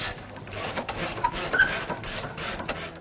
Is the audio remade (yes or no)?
yes